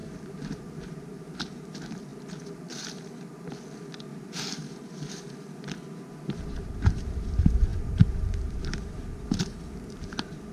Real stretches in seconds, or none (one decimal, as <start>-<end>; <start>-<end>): 2.1-6.0